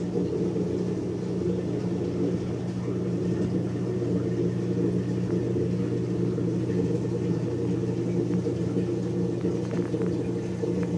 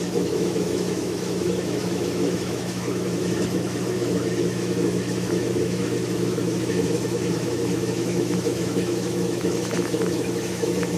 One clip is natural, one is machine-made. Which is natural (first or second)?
first